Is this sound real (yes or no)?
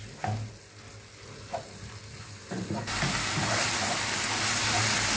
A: yes